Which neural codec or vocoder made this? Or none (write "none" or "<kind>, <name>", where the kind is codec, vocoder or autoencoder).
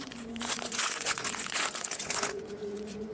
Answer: vocoder, Vocos